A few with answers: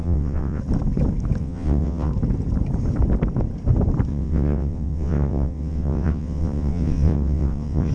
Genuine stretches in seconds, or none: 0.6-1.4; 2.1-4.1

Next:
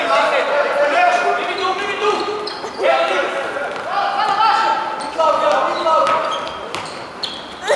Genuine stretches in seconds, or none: 0.0-6.2

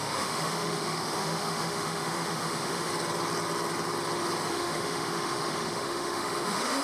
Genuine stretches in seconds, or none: 2.9-4.5

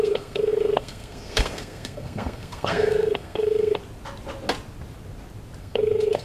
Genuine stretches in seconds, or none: 3.8-5.6

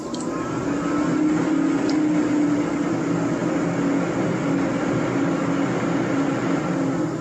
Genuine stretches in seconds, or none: 0.0-7.2

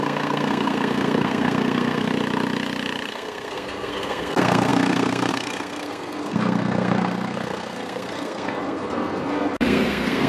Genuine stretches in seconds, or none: 2.1-3.1